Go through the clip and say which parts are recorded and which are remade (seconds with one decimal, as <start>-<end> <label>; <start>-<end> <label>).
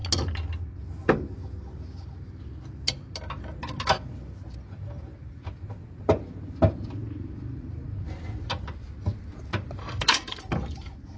0.0-9.8 recorded; 9.8-10.4 remade; 10.4-11.2 recorded